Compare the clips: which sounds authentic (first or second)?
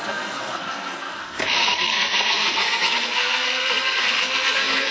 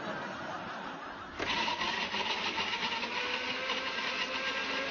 second